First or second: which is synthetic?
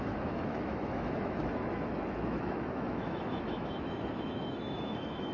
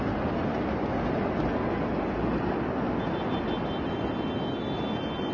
first